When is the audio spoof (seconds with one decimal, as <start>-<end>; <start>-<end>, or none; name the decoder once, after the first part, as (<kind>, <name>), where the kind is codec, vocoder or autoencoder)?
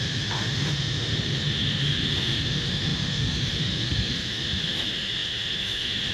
0.0-6.1 (autoencoder, DAC-VAE)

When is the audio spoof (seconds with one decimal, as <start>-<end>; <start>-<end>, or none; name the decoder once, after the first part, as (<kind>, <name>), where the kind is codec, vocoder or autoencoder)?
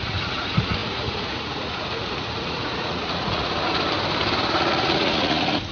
0.0-3.7 (vocoder, Vocos); 4.5-5.7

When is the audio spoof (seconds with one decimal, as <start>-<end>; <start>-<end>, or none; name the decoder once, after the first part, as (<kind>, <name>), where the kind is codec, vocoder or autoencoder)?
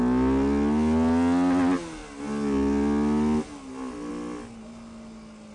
none